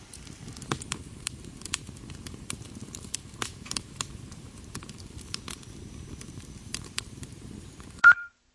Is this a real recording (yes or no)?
no